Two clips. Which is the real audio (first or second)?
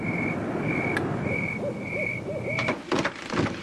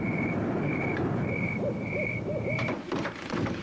first